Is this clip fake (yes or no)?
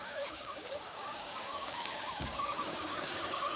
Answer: yes